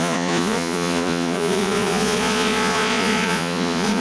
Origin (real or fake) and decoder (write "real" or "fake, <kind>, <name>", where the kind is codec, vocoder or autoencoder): fake, vocoder, Vocos